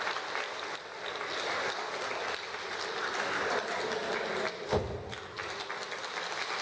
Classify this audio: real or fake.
real